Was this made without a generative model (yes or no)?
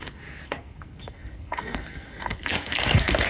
no